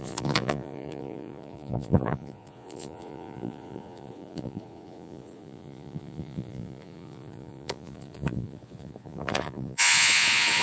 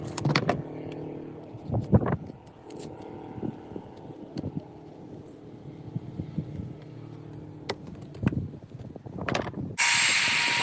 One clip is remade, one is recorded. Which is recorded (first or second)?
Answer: second